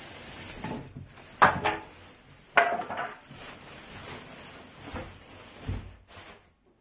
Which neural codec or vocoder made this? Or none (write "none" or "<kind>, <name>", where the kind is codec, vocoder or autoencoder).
none